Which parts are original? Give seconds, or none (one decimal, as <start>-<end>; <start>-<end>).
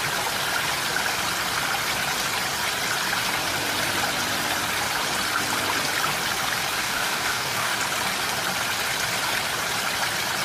0.0-6.8; 7.8-10.4